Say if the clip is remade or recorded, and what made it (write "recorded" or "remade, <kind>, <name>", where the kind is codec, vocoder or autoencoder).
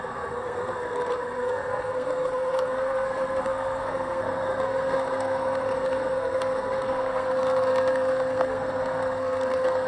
remade, codec, SNAC